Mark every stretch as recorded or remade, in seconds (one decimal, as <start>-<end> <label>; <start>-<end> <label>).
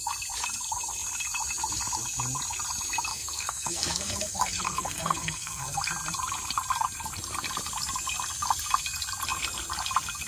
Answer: 0.0-3.1 recorded; 3.1-5.8 remade; 5.8-10.3 recorded